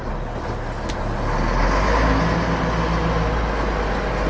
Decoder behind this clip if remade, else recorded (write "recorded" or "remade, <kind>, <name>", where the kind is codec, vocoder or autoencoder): recorded